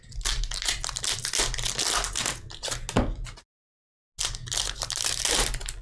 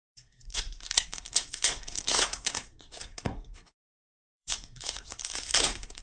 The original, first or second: first